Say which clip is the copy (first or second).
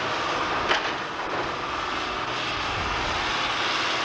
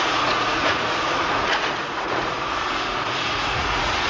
second